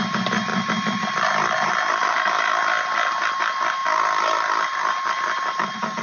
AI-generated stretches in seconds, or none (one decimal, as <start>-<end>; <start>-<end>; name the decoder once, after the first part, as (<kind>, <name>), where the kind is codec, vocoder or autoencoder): none